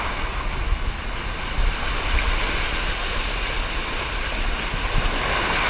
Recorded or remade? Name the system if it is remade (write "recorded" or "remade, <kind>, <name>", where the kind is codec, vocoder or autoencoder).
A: recorded